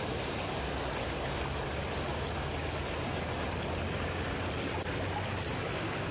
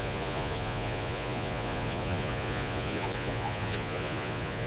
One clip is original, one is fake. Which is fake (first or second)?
second